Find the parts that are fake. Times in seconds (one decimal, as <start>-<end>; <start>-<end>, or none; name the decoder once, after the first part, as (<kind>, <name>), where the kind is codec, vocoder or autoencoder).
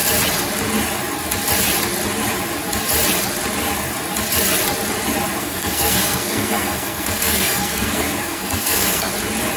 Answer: 5.4-9.1 (codec, SNAC)